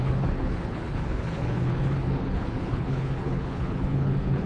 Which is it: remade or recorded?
remade